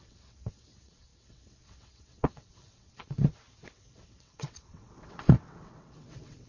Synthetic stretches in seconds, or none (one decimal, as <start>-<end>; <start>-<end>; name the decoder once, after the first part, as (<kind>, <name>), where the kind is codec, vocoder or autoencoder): 0.0-6.5 (vocoder, WaveNeXt)